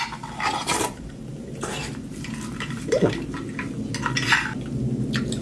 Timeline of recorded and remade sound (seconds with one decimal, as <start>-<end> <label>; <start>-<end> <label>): 0.0-0.6 recorded; 0.6-3.1 remade; 3.1-5.4 recorded